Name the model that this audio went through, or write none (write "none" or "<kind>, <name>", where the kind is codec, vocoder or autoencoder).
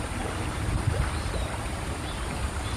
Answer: vocoder, BigVGAN v2